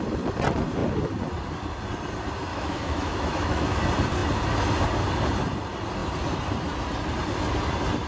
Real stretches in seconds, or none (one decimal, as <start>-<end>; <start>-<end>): 0.0-2.5; 3.8-8.1